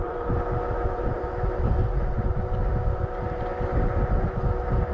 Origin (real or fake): real